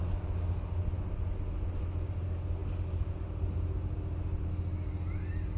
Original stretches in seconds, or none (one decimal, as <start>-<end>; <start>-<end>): 0.0-5.6